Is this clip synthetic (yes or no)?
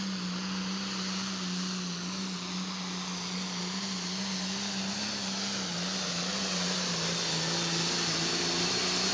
no